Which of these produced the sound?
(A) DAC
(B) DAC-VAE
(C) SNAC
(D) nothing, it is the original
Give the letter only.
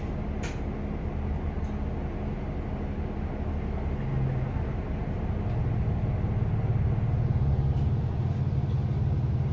D